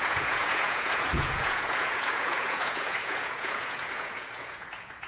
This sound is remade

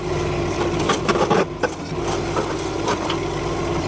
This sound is recorded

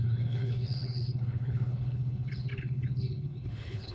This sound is remade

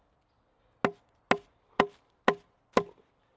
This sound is recorded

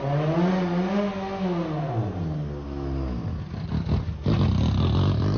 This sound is recorded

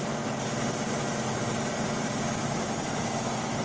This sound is recorded